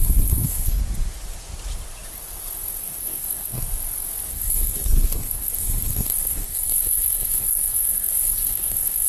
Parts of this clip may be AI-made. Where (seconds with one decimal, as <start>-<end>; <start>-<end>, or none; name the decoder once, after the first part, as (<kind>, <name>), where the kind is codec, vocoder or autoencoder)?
0.0-0.8 (codec, SNAC); 2.8-3.6; 4.3-9.1

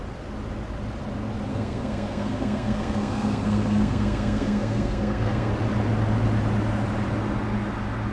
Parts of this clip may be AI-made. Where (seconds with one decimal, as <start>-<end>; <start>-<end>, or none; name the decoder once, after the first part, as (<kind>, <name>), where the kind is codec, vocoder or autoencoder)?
1.5-5.5 (codec, SNAC)

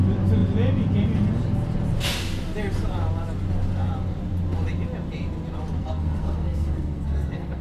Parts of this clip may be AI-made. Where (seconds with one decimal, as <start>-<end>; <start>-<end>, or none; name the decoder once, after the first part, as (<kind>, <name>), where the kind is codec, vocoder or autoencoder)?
5.8-7.6 (codec, SNAC)

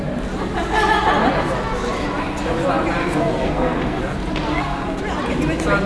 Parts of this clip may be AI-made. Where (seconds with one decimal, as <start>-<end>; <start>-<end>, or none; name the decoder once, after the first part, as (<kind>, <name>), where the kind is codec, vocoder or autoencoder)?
3.0-4.0 (codec, SNAC); 4.5-5.0

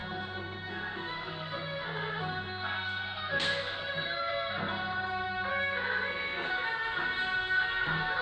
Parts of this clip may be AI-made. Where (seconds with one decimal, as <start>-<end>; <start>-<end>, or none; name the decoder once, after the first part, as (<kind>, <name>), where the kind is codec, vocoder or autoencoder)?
0.0-4.3 (codec, SNAC); 5.5-6.5

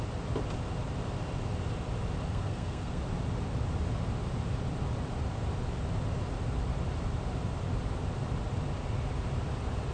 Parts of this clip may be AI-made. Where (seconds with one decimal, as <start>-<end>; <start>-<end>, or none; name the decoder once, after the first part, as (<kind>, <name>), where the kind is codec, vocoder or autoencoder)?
2.3-3.0 (codec, SNAC)